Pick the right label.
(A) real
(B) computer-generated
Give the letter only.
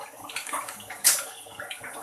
B